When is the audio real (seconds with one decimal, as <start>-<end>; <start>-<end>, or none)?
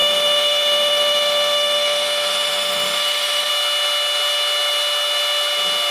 3.5-5.9